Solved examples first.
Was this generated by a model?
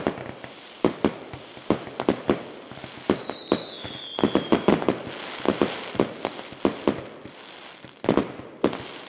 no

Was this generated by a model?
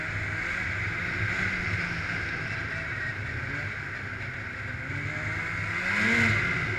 no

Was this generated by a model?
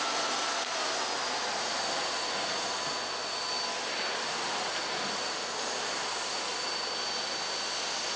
no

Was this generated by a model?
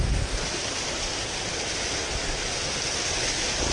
no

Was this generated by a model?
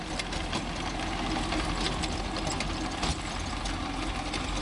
no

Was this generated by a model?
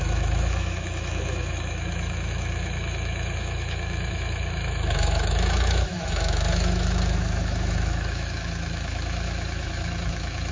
yes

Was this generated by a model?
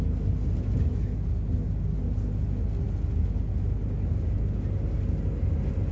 no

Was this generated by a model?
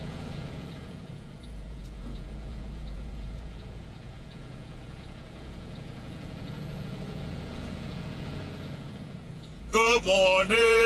yes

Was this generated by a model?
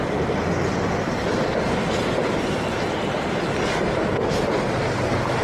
no